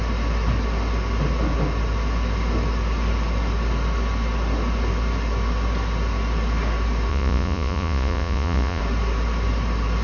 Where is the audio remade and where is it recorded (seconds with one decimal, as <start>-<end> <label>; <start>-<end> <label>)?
0.0-7.1 recorded; 7.1-8.8 remade; 8.8-10.0 recorded